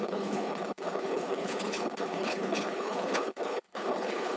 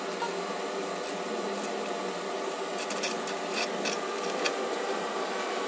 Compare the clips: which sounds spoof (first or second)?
first